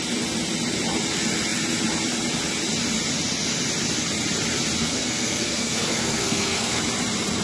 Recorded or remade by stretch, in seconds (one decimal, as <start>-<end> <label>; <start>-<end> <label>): 0.0-4.8 recorded; 4.8-6.8 remade; 6.8-7.4 recorded

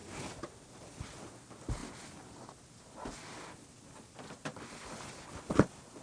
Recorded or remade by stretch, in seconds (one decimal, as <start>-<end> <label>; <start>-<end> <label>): 0.0-6.0 recorded

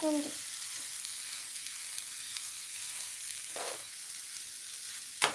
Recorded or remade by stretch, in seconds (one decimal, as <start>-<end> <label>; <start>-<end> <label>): 0.0-1.0 recorded; 1.0-3.9 remade; 3.9-5.3 recorded